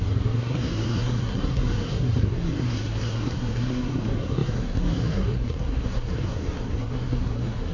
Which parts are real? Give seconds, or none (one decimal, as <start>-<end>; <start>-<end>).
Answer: none